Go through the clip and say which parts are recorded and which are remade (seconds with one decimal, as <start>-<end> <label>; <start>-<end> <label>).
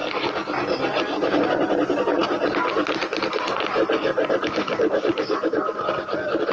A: 0.0-6.5 recorded